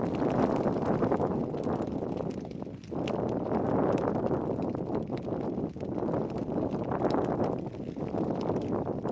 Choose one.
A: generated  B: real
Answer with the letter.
B